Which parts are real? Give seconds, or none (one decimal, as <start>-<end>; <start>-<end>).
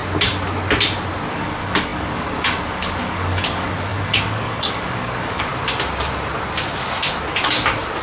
0.0-1.3; 5.5-8.0